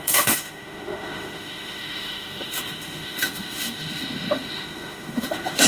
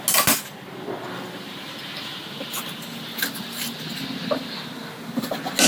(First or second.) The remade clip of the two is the first